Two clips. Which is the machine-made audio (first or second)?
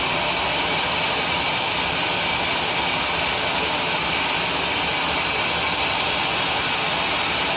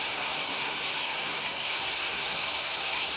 second